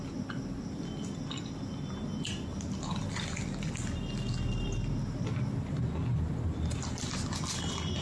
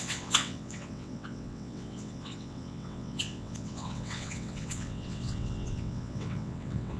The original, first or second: first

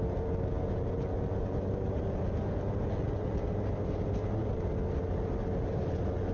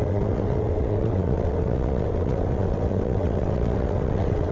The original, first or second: first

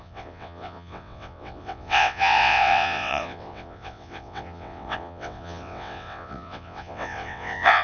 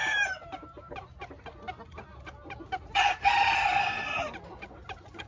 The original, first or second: second